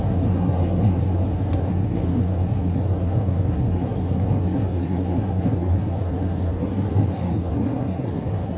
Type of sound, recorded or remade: remade